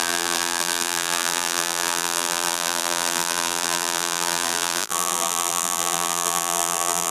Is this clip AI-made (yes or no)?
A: yes